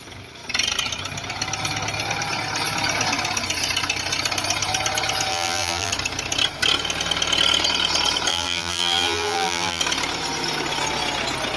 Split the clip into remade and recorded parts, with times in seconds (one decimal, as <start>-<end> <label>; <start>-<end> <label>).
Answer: 0.0-5.3 recorded; 5.3-5.9 remade; 5.9-8.3 recorded; 8.3-9.8 remade; 9.8-11.6 recorded